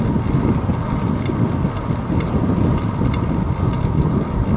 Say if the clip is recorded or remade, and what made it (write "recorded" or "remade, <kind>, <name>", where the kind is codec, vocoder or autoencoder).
recorded